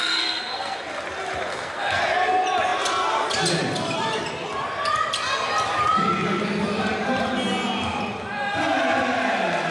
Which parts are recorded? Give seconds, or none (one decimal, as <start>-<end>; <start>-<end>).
0.8-1.5; 2.0-9.7